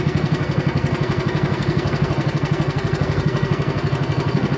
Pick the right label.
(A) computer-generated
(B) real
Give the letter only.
A